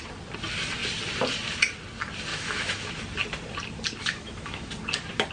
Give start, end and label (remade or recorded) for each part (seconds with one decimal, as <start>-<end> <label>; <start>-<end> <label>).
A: 0.0-2.3 recorded; 2.3-2.9 remade; 2.9-4.0 recorded; 4.0-4.7 remade; 4.7-5.3 recorded